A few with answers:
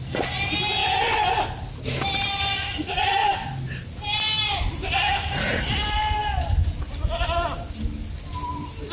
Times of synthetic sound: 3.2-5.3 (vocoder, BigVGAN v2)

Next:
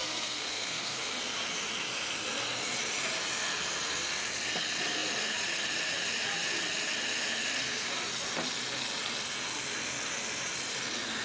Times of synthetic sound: 0.0-1.1 (codec, SNAC)

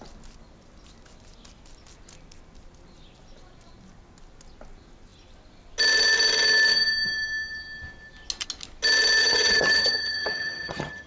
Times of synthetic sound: 9.2-11.1 (vocoder, HiFi-GAN)

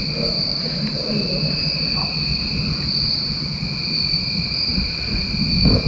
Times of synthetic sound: 0.5-1.1 (vocoder, BigVGAN v2); 1.6-5.1

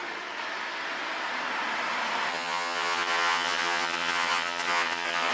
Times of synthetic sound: 2.3-5.3 (vocoder, HiFi-GAN)

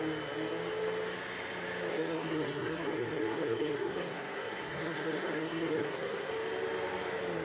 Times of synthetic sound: 1.9-6.3 (codec, SNAC)

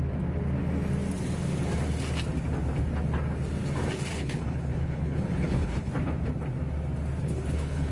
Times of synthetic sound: 4.1-5.9 (codec, HILCodec); 7.2-7.9